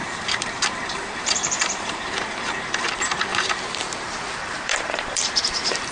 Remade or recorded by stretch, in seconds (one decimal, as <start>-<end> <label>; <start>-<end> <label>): 0.0-2.1 remade; 2.1-3.3 recorded; 3.3-5.4 remade; 5.4-5.9 recorded